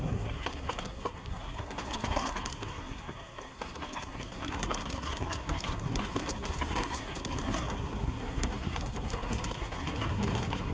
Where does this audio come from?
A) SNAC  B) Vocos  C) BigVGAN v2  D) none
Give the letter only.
A